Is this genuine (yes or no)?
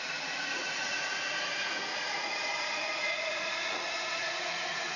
no